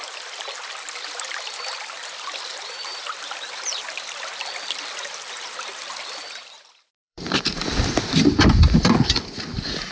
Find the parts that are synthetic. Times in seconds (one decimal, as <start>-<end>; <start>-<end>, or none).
7.0-9.0

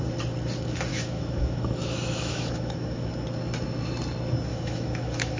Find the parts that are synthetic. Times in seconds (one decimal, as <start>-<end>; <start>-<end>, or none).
0.9-3.1; 4.5-5.4